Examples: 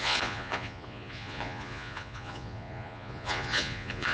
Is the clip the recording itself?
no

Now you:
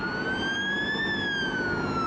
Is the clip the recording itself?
yes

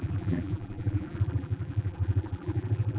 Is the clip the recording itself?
no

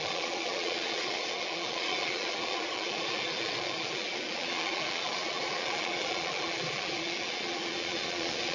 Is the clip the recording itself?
no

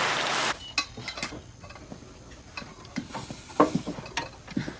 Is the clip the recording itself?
yes